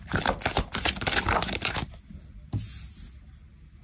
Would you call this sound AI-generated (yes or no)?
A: no